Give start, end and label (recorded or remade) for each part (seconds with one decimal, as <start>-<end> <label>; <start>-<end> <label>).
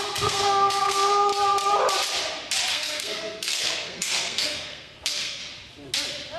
0.0-1.3 remade; 1.3-2.7 recorded; 2.7-5.4 remade; 5.4-6.4 recorded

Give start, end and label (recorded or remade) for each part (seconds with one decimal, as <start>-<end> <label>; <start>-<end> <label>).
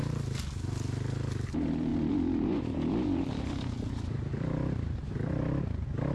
0.0-1.9 recorded; 1.9-5.6 remade; 5.6-6.1 recorded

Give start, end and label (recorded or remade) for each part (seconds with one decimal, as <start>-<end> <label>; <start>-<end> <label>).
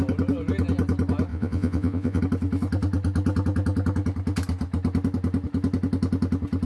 0.0-1.3 recorded; 1.3-2.2 remade; 2.2-6.7 recorded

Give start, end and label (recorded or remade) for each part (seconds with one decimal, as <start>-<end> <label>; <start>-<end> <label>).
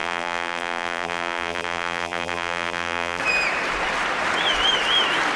0.0-3.2 remade; 3.2-5.4 recorded